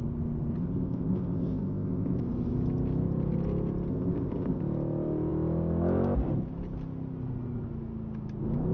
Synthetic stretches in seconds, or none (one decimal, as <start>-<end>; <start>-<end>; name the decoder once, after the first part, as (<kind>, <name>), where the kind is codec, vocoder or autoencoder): 0.6-2.2 (codec, ZipCodec); 3.9-4.6